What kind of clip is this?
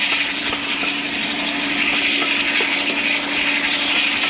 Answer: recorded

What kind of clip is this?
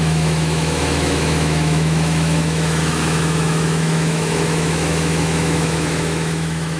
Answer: remade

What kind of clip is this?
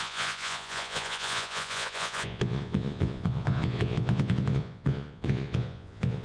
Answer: remade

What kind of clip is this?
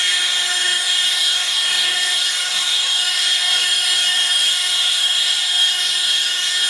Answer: remade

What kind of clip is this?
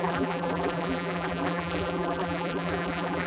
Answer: remade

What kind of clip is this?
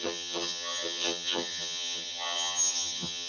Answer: remade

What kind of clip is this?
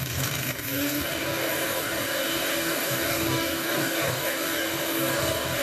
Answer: remade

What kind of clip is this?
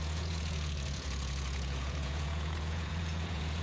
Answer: remade